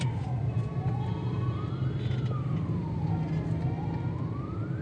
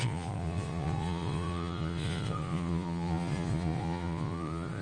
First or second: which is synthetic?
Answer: second